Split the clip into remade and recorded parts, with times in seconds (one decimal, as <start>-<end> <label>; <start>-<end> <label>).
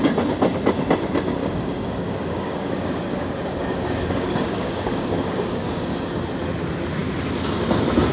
0.0-1.4 recorded; 1.4-5.8 remade; 5.8-8.1 recorded